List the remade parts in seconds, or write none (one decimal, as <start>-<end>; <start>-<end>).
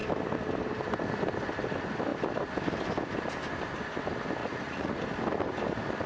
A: 4.4-5.0